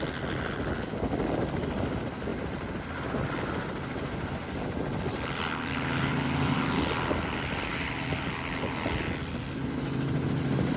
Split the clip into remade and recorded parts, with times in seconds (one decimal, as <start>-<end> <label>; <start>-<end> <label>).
0.0-10.8 recorded